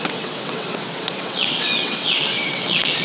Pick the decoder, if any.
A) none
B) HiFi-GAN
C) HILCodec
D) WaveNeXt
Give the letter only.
D